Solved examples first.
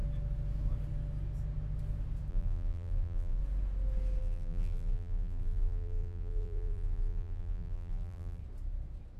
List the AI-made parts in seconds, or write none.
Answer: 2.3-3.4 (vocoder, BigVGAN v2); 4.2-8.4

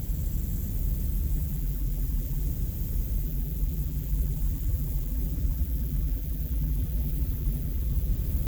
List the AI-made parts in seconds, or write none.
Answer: 1.3-2.5 (vocoder, BigVGAN v2); 3.2-8.1

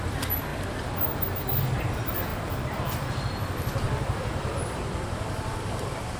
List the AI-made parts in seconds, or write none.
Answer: 2.3-4.8 (vocoder, BigVGAN v2)

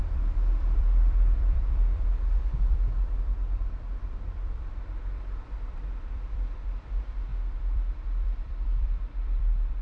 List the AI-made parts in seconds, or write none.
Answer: 0.0-9.8 (vocoder, BigVGAN v2)

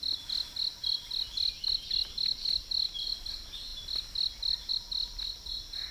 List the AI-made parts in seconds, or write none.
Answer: none

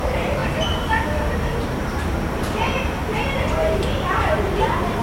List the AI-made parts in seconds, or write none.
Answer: 0.0-5.0 (vocoder, BigVGAN v2)

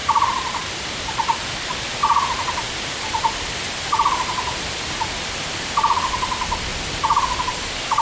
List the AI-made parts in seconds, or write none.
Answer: 0.0-1.0 (vocoder, BigVGAN v2); 6.7-8.0

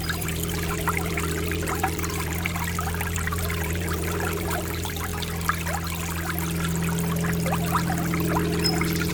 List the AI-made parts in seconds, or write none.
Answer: 0.0-5.1 (vocoder, BigVGAN v2)